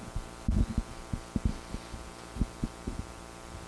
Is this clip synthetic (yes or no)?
no